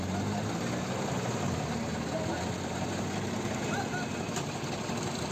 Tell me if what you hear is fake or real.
real